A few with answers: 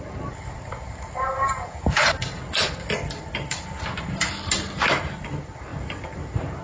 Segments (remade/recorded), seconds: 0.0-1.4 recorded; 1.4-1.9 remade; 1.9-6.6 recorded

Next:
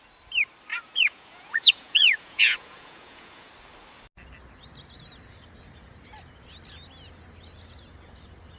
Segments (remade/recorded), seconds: 0.0-0.7 recorded; 0.7-3.5 remade; 3.5-8.6 recorded

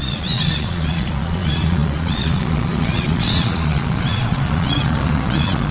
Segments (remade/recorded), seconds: 0.0-5.7 remade

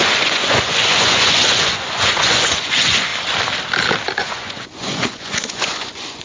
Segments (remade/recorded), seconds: 0.0-3.1 remade; 3.1-4.2 recorded; 4.2-6.2 remade